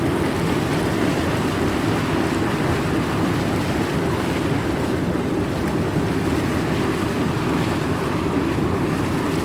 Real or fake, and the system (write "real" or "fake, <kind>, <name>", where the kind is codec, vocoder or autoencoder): real